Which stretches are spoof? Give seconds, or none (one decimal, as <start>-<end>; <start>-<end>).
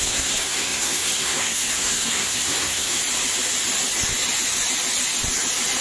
0.0-3.0